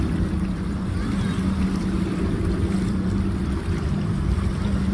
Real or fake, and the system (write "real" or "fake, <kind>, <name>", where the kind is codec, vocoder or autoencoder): fake, vocoder, BigVGAN v2